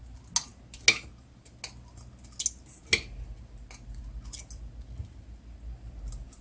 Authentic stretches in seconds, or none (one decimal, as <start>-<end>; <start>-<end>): 0.0-6.4